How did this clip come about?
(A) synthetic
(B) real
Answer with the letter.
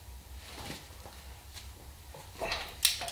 B